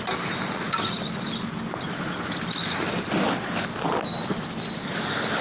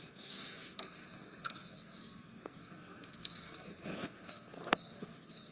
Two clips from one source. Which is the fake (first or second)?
second